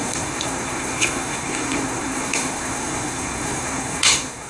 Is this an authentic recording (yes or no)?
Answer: no